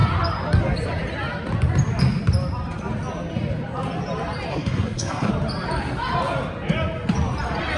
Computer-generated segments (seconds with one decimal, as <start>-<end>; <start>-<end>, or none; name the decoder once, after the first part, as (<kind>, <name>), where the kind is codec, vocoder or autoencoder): 4.5-5.3 (codec, SNAC)